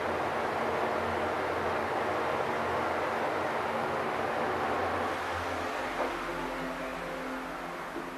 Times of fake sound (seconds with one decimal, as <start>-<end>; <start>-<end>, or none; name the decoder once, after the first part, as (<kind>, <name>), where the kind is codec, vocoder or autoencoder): none